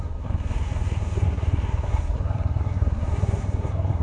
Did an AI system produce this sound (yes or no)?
yes